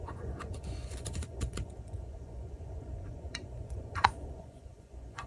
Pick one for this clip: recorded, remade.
remade